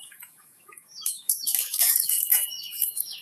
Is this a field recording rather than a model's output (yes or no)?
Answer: no